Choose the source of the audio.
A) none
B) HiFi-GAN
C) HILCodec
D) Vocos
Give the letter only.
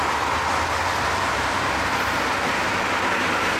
A